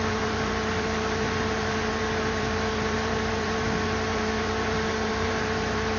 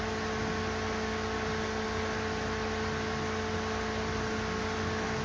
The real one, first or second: second